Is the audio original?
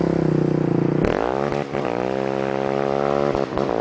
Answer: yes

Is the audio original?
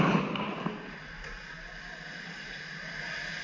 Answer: yes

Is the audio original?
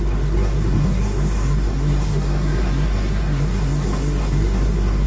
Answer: no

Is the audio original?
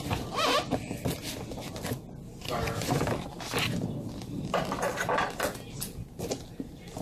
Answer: yes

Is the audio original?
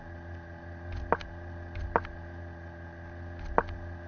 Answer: yes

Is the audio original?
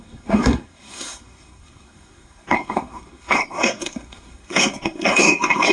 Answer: no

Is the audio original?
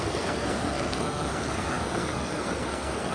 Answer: no